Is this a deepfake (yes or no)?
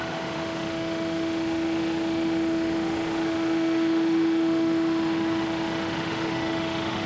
yes